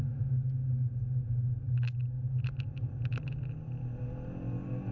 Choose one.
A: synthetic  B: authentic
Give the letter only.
B